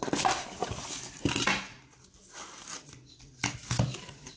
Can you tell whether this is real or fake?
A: real